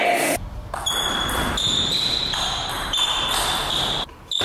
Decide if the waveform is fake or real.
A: real